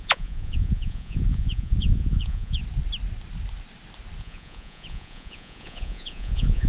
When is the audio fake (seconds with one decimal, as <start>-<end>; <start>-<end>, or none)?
0.0-2.6; 4.2-6.7